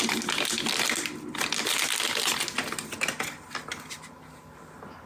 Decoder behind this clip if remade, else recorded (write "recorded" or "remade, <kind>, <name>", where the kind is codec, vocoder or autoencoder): recorded